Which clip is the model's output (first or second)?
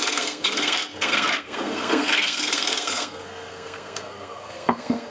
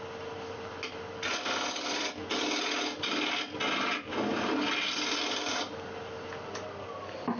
first